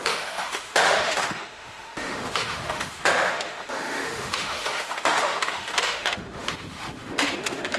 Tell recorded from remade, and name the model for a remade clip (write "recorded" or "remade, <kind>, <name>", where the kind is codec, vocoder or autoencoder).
remade, autoencoder, DAC-VAE